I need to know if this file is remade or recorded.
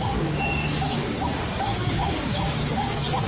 remade